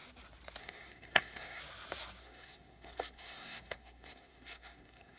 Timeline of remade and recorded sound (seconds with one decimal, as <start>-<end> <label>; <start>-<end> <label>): 0.0-0.6 recorded; 0.6-1.6 remade; 1.6-2.2 recorded; 2.2-5.2 remade